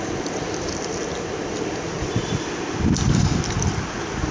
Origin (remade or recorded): recorded